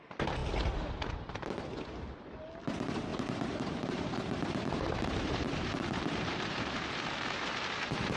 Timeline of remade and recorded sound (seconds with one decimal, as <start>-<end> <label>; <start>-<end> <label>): 0.0-3.1 recorded; 3.1-8.2 remade